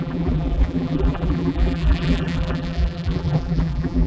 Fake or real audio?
fake